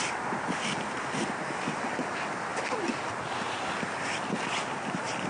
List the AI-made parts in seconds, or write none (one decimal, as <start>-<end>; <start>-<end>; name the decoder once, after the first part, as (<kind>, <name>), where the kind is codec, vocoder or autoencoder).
none